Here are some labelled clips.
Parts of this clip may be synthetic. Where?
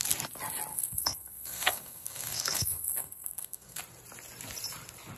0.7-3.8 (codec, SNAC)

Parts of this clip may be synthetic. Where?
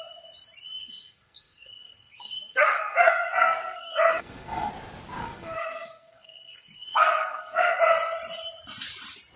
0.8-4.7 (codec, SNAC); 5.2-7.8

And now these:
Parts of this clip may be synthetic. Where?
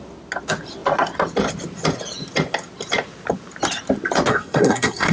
4.3-5.1 (codec, SNAC)